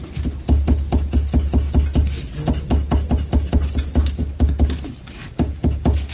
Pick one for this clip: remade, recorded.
recorded